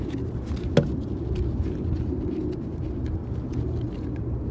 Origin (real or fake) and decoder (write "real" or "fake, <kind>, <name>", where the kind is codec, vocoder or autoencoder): real